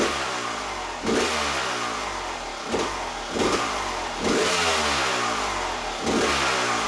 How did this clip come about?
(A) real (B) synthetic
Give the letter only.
A